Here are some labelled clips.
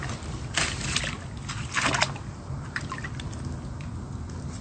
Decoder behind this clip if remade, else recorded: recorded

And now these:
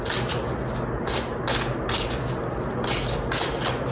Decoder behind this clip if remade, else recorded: recorded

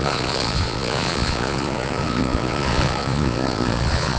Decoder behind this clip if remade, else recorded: remade, vocoder, Vocos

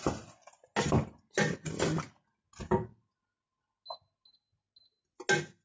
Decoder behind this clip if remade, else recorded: recorded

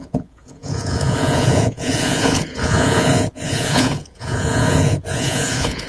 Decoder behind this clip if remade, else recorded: remade, vocoder, Vocos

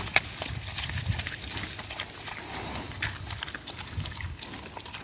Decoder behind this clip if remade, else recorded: recorded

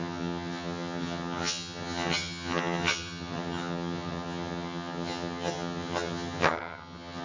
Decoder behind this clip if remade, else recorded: remade, vocoder, HiFi-GAN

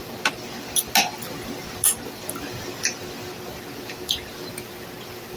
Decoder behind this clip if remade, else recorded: recorded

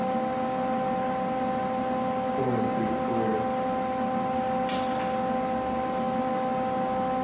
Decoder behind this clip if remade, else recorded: recorded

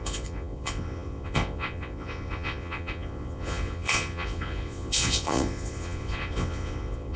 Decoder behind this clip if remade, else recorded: remade, vocoder, Vocos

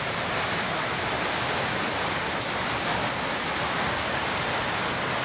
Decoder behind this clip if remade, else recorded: recorded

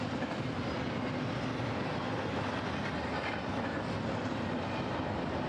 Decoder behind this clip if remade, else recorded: recorded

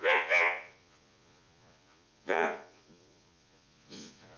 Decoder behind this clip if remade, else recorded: remade, vocoder, Vocos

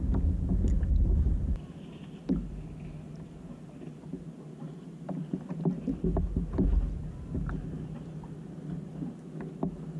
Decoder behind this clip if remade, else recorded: recorded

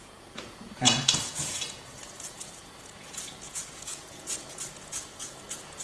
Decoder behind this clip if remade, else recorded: remade, vocoder, Vocos